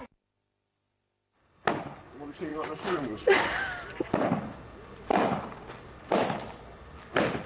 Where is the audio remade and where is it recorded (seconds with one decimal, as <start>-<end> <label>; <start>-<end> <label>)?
0.0-2.5 recorded; 2.5-3.6 remade; 3.6-5.1 recorded; 5.1-5.7 remade; 5.7-7.5 recorded